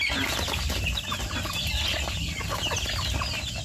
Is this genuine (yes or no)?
yes